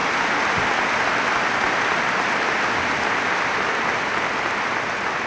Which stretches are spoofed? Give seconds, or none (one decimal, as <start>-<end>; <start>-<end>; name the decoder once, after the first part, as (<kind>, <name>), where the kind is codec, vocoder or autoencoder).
none